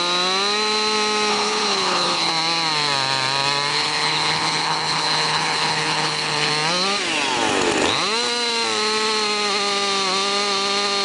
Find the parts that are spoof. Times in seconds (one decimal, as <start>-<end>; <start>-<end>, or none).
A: 1.3-2.3; 3.7-6.5